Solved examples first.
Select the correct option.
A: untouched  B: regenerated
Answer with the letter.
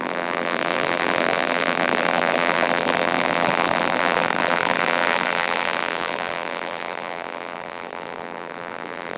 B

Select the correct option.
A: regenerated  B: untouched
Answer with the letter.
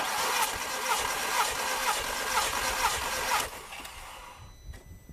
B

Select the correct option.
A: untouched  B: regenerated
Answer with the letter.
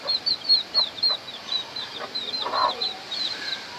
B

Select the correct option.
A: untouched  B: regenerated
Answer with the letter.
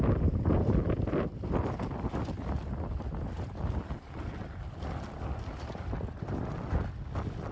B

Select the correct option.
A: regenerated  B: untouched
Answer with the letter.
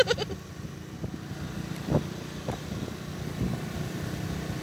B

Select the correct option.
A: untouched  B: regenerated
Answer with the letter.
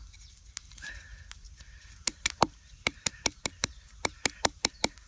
B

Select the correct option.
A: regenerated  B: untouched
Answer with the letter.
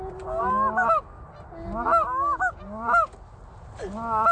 B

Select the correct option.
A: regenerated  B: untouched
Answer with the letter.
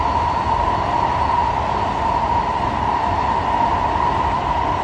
B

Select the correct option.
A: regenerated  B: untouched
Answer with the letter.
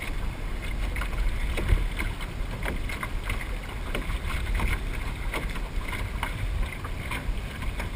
B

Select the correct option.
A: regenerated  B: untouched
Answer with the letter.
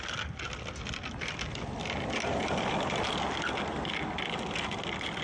B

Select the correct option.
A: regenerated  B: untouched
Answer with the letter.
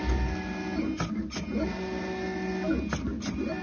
B